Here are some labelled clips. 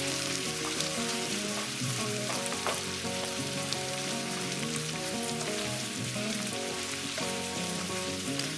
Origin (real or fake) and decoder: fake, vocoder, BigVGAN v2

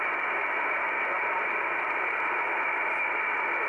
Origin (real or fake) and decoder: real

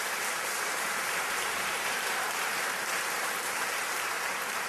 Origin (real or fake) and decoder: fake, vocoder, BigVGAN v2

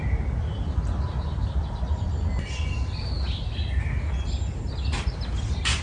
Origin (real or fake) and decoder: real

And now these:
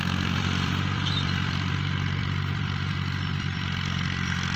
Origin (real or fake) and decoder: fake, vocoder, BigVGAN v2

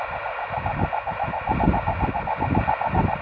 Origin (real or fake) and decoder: real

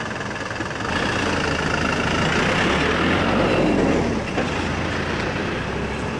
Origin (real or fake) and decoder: real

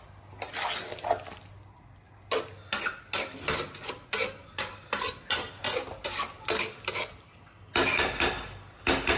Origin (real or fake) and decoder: real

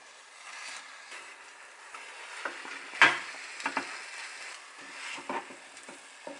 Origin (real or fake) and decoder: real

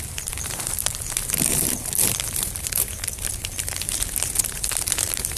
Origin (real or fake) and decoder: fake, vocoder, BigVGAN v2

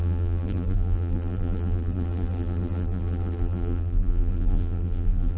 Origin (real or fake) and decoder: fake, vocoder, BigVGAN v2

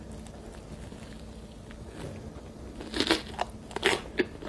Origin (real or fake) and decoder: real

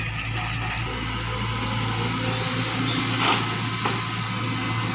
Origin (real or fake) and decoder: real